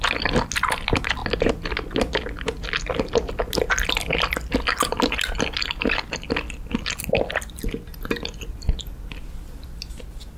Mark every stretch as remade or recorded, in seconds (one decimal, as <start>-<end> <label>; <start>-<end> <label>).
0.0-10.4 recorded